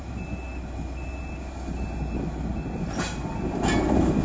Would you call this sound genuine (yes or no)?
yes